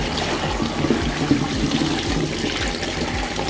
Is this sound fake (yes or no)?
no